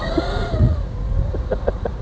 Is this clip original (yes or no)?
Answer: no